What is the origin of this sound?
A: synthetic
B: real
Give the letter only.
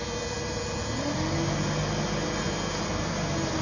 B